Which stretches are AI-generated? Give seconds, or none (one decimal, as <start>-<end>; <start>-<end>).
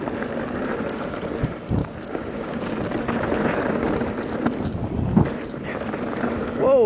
1.8-2.8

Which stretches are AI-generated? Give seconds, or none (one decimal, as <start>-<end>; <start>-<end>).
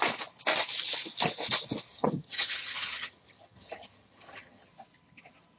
1.9-4.7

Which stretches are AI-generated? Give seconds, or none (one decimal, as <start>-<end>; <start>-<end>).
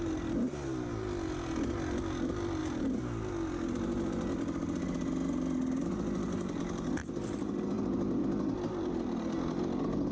none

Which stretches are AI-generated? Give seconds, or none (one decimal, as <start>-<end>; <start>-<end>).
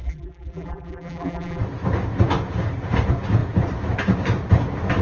0.0-1.6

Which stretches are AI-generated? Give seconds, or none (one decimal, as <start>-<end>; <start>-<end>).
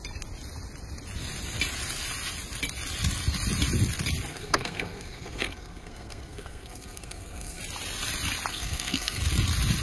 4.3-7.6; 8.5-9.2